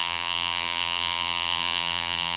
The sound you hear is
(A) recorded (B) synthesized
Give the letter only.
B